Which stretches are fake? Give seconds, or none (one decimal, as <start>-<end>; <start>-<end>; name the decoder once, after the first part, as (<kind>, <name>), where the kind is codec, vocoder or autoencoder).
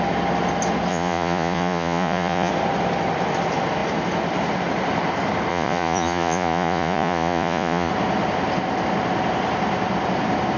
0.9-2.5 (vocoder, Vocos); 5.5-7.9